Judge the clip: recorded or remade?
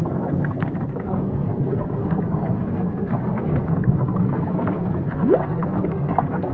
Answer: remade